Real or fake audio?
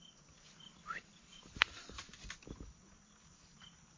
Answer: real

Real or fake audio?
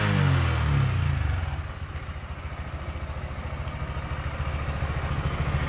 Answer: real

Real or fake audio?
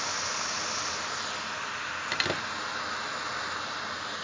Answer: real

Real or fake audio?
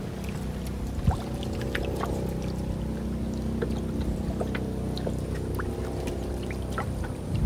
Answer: real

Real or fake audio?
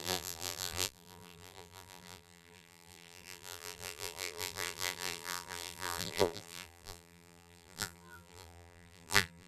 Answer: fake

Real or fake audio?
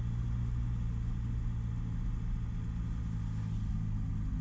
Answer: real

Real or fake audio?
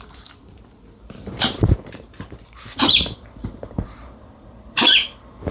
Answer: fake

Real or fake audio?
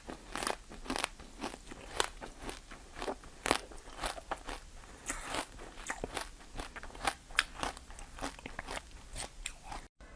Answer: real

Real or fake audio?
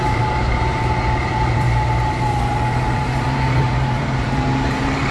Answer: fake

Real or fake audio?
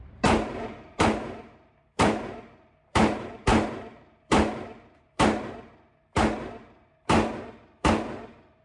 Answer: fake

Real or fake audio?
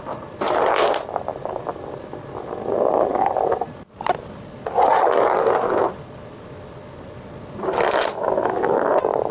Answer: real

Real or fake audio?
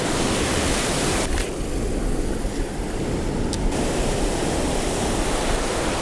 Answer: real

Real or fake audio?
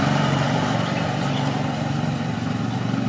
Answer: fake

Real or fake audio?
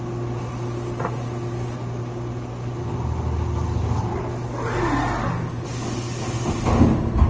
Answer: real